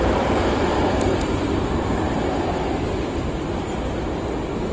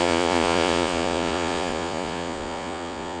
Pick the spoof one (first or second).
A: second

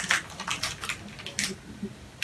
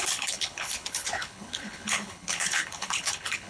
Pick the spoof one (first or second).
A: second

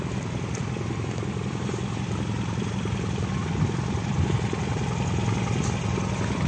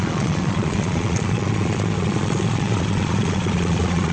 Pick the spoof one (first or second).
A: second